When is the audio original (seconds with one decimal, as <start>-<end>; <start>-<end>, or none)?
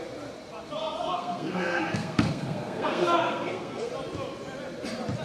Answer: 0.0-0.8; 3.9-5.2